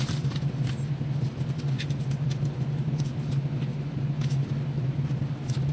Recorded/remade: recorded